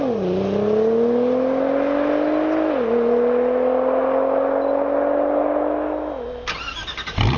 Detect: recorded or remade recorded